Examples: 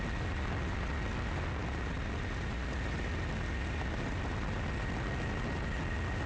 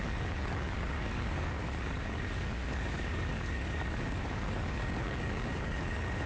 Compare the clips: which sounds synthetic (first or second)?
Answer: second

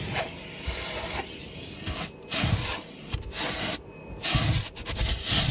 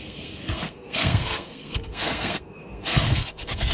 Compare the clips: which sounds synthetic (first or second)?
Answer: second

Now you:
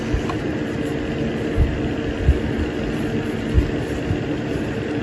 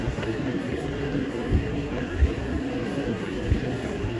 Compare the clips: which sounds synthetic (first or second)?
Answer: second